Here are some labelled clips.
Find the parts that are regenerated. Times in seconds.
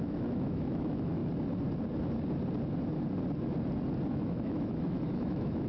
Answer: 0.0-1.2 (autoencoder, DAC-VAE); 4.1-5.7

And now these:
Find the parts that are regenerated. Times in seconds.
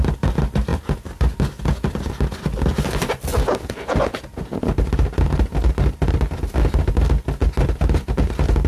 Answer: none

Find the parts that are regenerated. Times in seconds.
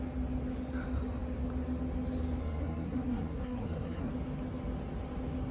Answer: 2.4-4.1 (codec, SNAC)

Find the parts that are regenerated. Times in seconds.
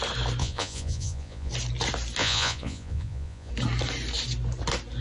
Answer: 0.4-1.5 (vocoder, Vocos); 2.2-3.5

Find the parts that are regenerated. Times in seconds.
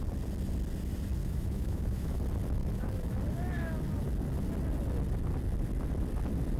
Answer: 1.2-2.2 (autoencoder, DAC-VAE); 2.6-3.2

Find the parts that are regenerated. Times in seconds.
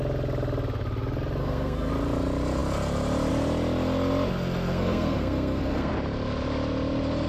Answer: 1.4-1.9 (codec, SNAC); 4.7-5.9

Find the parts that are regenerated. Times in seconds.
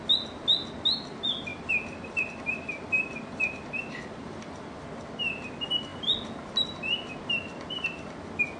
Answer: 1.5-4.7 (vocoder, BigVGAN v2)